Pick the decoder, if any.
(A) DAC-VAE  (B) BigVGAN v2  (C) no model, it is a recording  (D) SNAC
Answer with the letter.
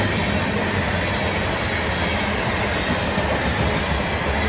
C